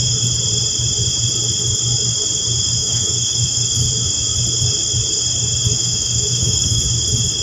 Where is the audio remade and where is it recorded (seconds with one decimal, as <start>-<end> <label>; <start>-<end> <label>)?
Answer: 0.0-2.8 recorded; 2.8-3.7 remade; 3.7-5.7 recorded; 5.7-6.8 remade; 6.8-7.4 recorded

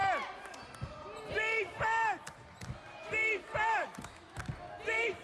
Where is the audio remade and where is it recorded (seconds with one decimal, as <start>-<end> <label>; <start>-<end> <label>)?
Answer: 0.0-3.8 recorded; 3.8-4.5 remade; 4.5-5.2 recorded

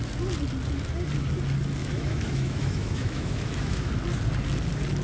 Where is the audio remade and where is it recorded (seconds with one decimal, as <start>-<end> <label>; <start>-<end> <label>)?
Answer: 0.0-1.8 recorded; 1.8-3.9 remade; 3.9-5.0 recorded

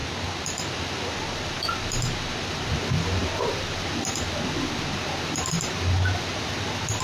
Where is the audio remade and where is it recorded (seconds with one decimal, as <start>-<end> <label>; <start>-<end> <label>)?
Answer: 0.0-7.0 recorded

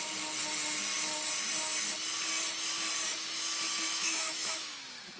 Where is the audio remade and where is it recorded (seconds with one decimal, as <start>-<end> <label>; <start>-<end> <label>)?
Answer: 0.0-4.0 recorded; 4.0-4.8 remade; 4.8-5.2 recorded

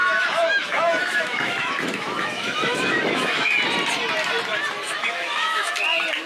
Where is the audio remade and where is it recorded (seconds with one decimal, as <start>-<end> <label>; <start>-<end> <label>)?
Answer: 0.0-3.5 remade; 3.5-5.0 recorded; 5.0-5.7 remade; 5.7-6.3 recorded

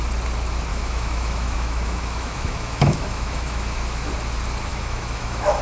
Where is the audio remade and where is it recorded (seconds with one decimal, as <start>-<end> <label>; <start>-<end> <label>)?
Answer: 0.0-0.7 recorded; 0.7-4.1 remade; 4.1-4.7 recorded; 4.7-5.6 remade